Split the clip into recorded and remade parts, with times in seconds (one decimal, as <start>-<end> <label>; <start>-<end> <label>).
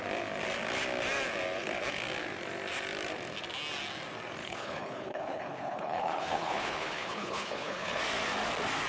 0.0-4.4 recorded; 4.4-8.0 remade; 8.0-8.9 recorded